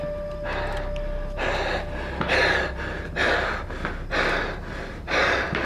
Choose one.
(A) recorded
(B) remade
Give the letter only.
A